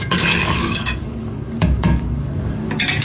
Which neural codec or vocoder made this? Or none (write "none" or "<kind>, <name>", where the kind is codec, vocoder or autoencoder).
codec, DAC